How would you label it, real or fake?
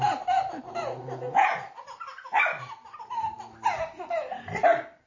real